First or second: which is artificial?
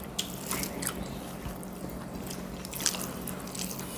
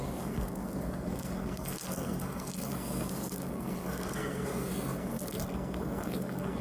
second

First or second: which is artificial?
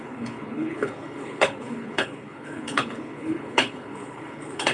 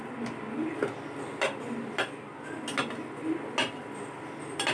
first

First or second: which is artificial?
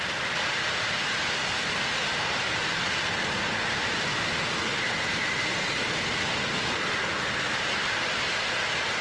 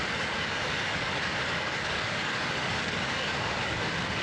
second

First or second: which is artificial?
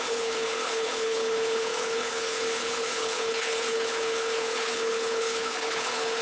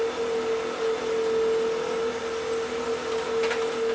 first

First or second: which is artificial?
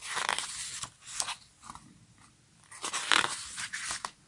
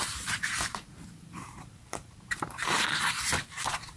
second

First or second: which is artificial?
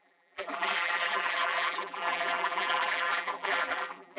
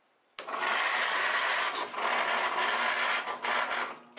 first